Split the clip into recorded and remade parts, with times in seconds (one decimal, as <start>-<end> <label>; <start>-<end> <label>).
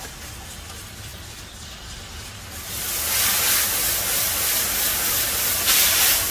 0.0-6.3 recorded